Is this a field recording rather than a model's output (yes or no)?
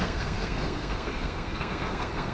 no